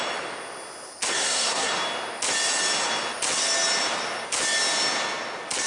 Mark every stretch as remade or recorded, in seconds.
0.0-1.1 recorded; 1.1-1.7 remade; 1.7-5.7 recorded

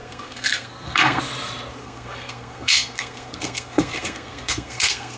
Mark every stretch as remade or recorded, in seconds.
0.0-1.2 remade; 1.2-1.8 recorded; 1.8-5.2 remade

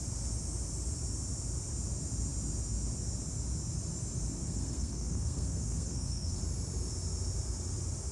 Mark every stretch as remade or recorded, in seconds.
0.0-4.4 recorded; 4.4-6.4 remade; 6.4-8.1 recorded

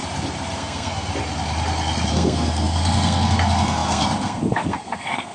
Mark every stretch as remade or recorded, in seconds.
0.0-0.6 recorded; 0.6-1.1 remade; 1.1-2.1 recorded; 2.1-5.3 remade

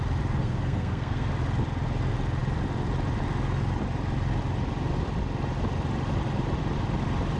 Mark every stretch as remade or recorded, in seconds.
0.0-0.4 recorded; 0.4-1.3 remade; 1.3-7.4 recorded

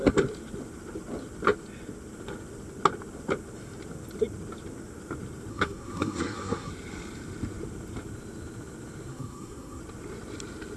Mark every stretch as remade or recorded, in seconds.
0.0-5.5 recorded; 5.5-6.7 remade; 6.7-9.1 recorded; 9.1-9.8 remade; 9.8-10.8 recorded

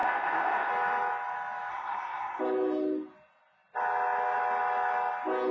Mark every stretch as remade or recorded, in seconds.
0.0-0.7 remade; 0.7-1.7 recorded; 1.7-2.4 remade; 2.4-5.5 recorded

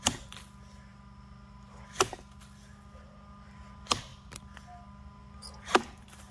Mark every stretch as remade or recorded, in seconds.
0.0-6.3 recorded